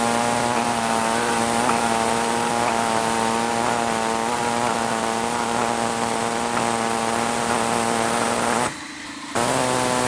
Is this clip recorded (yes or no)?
yes